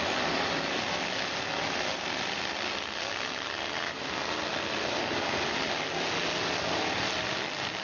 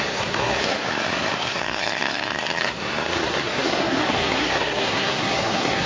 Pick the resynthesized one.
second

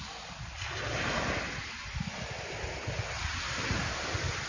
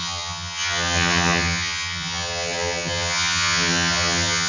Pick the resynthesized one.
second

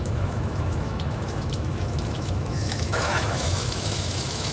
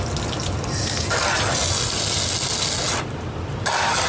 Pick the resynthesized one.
first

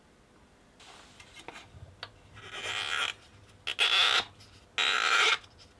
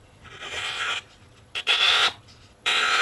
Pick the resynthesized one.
second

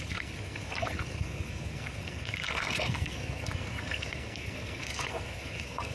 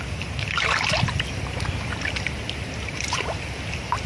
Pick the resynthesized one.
first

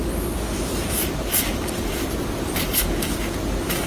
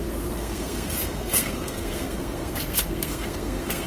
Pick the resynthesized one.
second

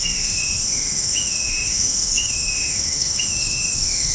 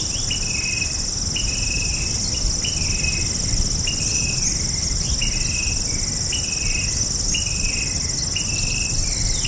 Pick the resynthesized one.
first